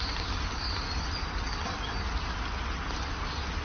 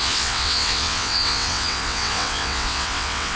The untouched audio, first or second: first